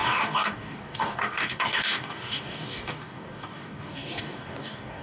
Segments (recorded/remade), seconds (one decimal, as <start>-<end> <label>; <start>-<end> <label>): 0.0-5.0 remade